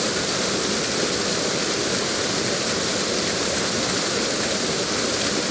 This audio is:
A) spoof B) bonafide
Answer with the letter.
B